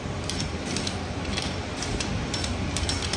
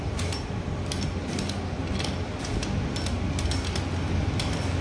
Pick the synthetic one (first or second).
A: first